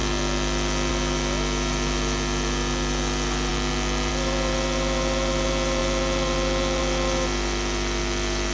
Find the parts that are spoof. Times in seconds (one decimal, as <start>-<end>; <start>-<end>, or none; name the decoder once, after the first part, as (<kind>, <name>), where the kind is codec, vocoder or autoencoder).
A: 0.9-3.5 (vocoder, BigVGAN v2); 4.1-8.5